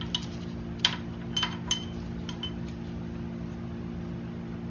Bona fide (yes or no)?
yes